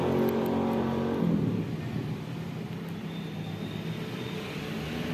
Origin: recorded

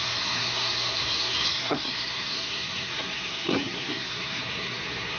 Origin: remade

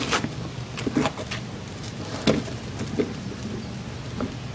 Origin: recorded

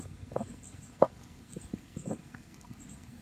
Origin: remade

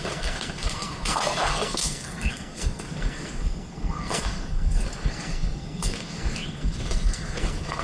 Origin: remade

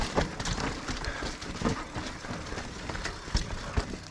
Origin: recorded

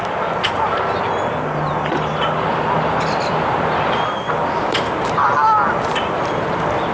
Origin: recorded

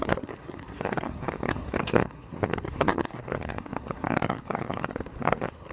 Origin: remade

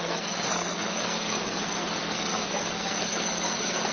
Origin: remade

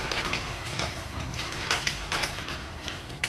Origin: remade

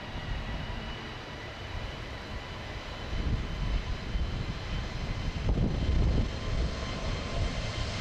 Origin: recorded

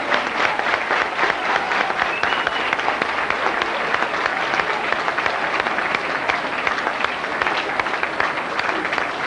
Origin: recorded